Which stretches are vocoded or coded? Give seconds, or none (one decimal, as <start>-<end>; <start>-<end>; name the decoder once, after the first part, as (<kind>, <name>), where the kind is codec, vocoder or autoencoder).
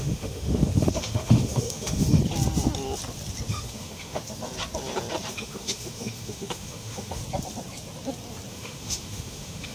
0.0-2.2 (autoencoder, DAC-VAE); 3.5-4.2; 5.3-7.2; 8.5-9.7